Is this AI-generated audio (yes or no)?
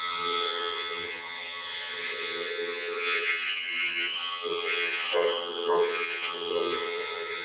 yes